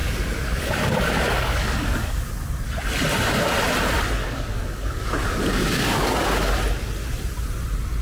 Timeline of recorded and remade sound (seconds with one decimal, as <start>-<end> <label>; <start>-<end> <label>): 0.0-2.3 remade; 2.3-4.2 recorded; 4.2-6.5 remade; 6.5-8.0 recorded